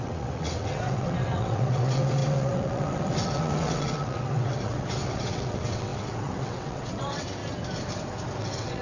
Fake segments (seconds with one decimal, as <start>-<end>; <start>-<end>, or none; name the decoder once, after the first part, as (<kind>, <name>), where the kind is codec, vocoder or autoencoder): 0.0-7.4 (vocoder, WaveNeXt); 8.4-8.8